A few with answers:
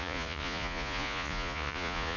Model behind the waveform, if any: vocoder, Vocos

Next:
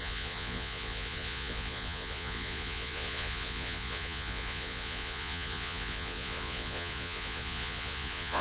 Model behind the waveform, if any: vocoder, Vocos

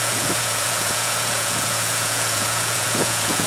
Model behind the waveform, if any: vocoder, Vocos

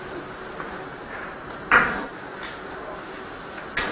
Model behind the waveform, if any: none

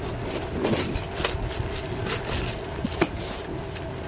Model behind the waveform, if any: none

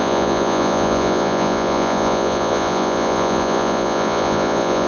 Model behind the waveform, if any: vocoder, Vocos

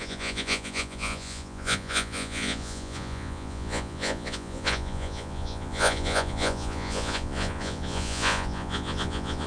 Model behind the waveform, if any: vocoder, Vocos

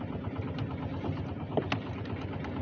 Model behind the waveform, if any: none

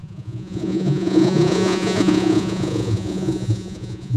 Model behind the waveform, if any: vocoder, Vocos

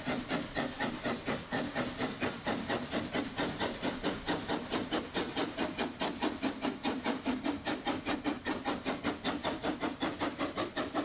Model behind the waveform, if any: none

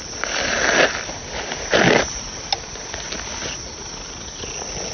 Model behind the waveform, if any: none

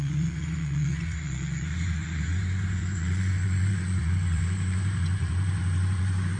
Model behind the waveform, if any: vocoder, Vocos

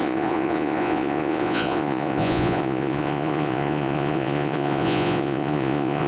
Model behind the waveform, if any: vocoder, Vocos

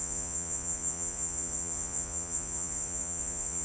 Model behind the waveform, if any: vocoder, Vocos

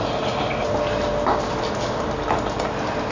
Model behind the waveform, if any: none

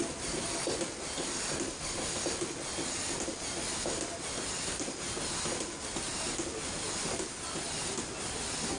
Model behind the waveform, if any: none